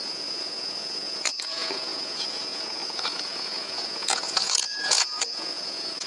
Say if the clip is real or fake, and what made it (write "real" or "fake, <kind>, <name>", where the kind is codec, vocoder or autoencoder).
fake, vocoder, Vocos